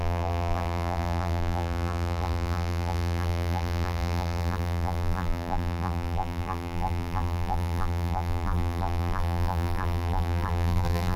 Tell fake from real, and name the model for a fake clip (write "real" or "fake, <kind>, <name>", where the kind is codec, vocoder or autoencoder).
fake, vocoder, BigVGAN v2